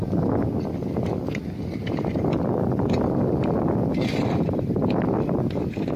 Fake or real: real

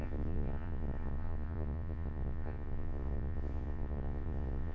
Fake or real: fake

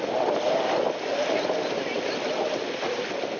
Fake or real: real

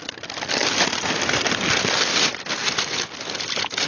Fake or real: fake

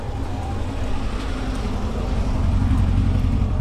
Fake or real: real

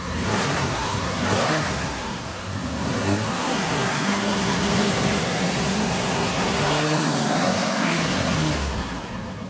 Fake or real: fake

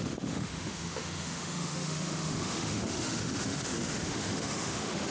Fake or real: fake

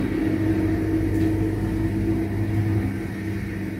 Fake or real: real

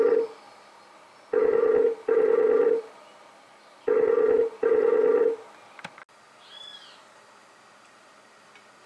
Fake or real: real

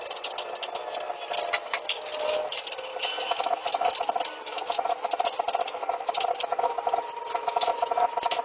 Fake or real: real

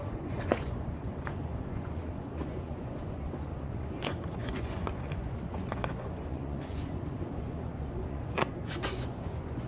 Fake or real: fake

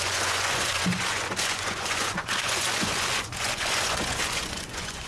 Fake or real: fake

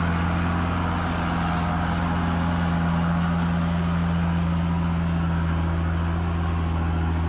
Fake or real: real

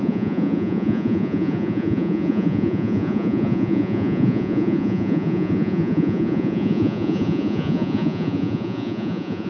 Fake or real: fake